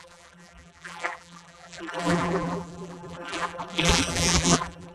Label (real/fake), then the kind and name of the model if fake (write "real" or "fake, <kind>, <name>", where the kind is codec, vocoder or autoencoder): fake, vocoder, BigVGAN v2